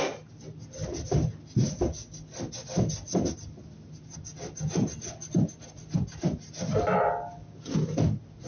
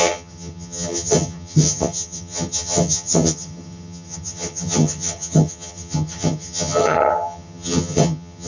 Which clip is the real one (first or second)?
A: first